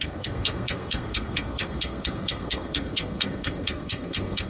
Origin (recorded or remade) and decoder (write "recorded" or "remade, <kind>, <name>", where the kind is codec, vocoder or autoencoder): remade, codec, SNAC